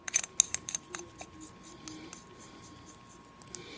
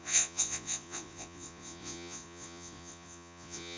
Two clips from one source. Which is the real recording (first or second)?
first